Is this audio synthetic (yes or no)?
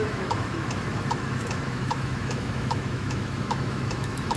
yes